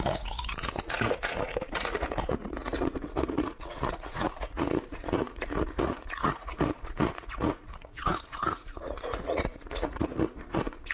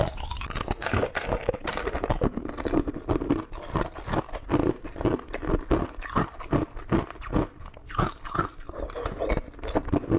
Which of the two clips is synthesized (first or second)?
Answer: first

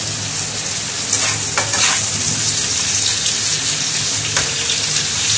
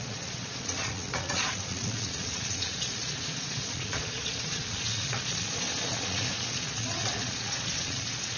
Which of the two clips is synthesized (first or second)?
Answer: second